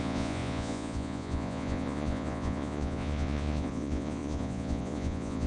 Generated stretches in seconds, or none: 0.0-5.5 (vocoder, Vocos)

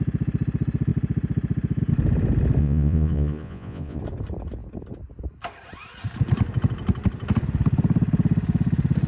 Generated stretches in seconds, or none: 2.6-4.0 (vocoder, Vocos)